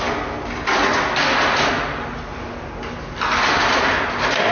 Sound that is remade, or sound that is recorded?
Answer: recorded